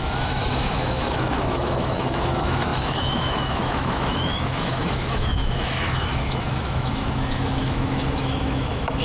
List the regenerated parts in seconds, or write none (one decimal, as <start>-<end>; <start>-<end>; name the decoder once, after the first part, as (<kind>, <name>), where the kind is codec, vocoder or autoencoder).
0.0-9.0 (autoencoder, DAC-VAE)